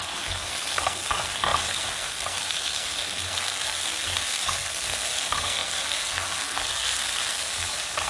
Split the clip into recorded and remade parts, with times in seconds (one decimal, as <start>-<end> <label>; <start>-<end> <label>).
0.0-8.1 remade